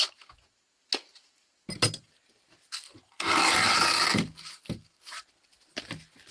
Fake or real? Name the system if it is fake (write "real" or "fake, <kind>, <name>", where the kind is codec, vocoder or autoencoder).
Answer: real